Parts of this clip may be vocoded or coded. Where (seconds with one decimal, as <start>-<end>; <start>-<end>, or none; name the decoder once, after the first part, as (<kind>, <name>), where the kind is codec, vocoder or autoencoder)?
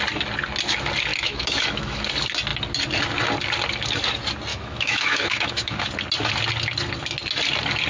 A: 1.1-2.0 (autoencoder, DAC-VAE); 4.5-5.9